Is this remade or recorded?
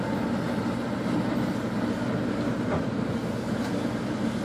recorded